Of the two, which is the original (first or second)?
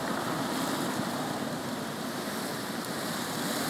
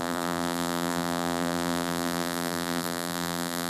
first